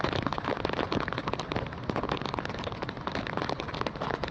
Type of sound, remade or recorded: recorded